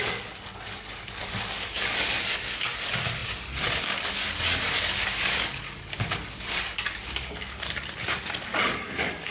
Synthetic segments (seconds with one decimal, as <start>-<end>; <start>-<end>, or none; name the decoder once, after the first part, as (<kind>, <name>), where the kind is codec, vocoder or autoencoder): 0.0-9.3 (codec, DAC)